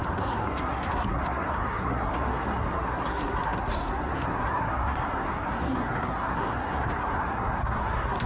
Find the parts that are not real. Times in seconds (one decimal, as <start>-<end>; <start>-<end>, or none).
0.0-8.3